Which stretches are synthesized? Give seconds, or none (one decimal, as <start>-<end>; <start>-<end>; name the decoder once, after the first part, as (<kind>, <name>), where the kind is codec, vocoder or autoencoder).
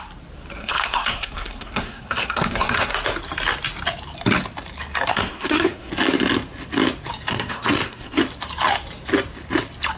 0.6-2.9 (codec, SNAC); 5.1-5.9; 7.3-8.2